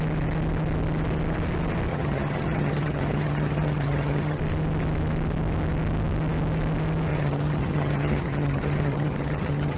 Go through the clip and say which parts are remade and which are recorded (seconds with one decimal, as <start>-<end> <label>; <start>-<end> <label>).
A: 0.0-1.9 recorded; 1.9-4.4 remade; 4.4-7.1 recorded; 7.1-9.8 remade